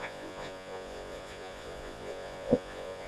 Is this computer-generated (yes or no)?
yes